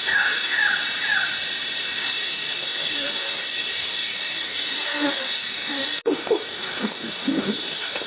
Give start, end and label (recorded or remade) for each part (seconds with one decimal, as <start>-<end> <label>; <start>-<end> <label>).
0.0-0.6 remade; 0.6-1.8 recorded; 1.8-8.1 remade